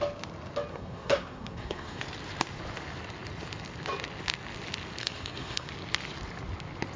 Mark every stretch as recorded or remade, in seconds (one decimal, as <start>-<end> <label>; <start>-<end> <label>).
0.0-0.7 recorded; 0.7-2.0 remade; 2.0-5.0 recorded; 5.0-5.7 remade; 5.7-7.0 recorded